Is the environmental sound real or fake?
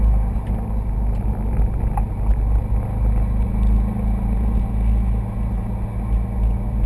real